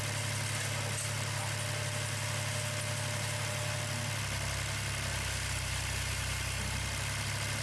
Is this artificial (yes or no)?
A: no